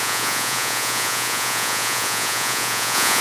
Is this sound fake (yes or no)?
yes